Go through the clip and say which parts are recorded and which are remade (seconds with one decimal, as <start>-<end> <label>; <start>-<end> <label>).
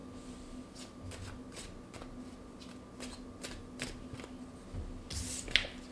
0.0-5.9 recorded